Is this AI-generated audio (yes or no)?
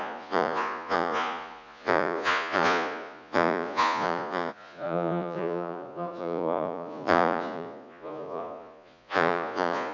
yes